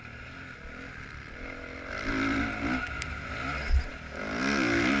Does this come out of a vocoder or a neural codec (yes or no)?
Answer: no